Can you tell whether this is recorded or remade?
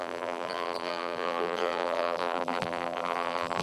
remade